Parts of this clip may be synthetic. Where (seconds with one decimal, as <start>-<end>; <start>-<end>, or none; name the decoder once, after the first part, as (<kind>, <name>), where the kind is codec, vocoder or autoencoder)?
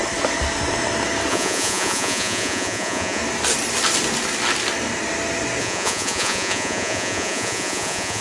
1.3-3.2 (vocoder, Vocos); 5.6-8.2